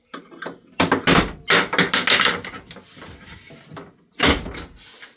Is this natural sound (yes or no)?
yes